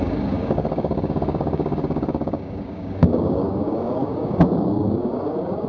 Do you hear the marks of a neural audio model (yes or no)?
yes